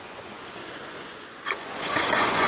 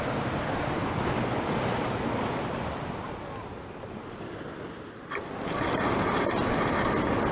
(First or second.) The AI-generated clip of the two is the first